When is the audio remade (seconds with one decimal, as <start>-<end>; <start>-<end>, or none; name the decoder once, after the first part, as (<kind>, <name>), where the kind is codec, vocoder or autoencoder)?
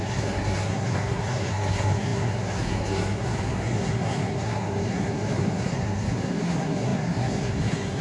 0.0-8.0 (codec, SNAC)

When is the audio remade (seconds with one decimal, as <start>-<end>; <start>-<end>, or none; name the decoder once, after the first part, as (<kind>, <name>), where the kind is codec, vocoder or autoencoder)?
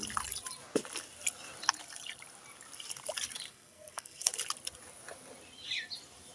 3.5-4.3 (codec, SNAC)